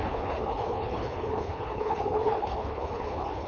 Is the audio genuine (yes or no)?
no